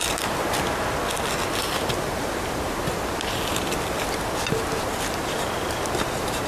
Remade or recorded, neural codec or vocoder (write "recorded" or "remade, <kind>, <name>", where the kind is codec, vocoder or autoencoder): recorded